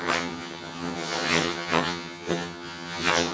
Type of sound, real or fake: fake